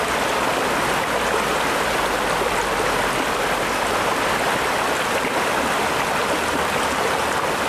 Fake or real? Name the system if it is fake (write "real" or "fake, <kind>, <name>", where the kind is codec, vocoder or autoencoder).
real